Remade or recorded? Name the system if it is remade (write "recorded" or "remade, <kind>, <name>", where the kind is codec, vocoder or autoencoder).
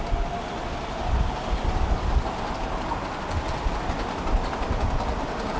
recorded